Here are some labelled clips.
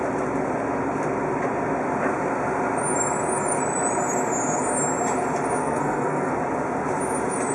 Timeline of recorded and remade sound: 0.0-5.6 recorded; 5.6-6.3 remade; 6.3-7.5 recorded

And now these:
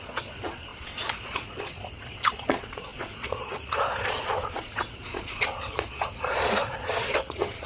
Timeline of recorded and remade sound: 0.0-7.7 remade

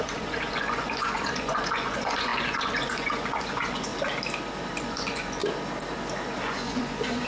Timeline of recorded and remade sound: 0.0-3.9 remade; 3.9-4.8 recorded; 4.8-5.4 remade; 5.4-6.4 recorded; 6.4-7.3 remade